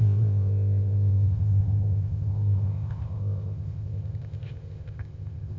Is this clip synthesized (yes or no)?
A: yes